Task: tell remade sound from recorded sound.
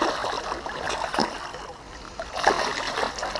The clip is recorded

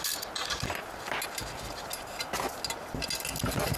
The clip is recorded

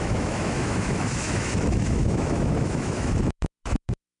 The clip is remade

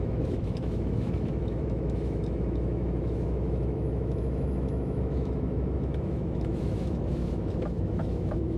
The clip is remade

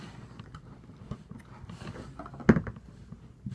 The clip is recorded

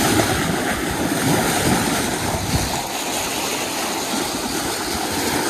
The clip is recorded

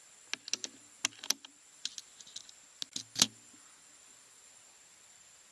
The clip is recorded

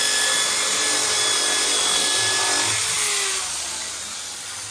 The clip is recorded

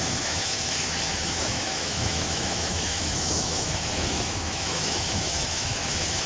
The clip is remade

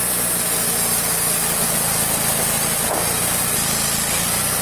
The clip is recorded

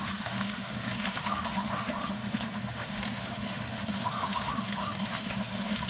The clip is remade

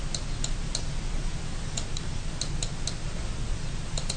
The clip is recorded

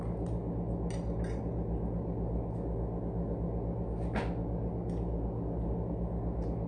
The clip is recorded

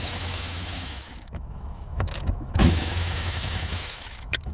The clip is remade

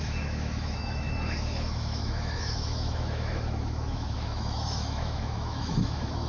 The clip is remade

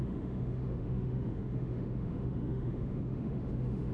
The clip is remade